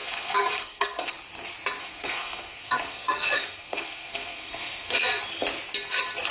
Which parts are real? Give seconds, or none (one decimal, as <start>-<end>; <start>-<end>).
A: 1.1-1.8; 5.2-6.3